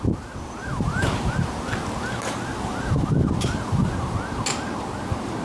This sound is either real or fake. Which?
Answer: real